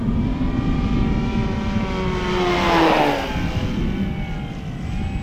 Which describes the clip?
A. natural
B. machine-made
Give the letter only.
A